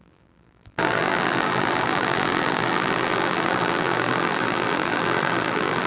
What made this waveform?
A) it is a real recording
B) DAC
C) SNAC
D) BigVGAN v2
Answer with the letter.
D